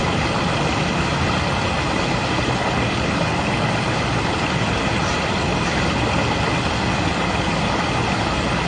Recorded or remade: recorded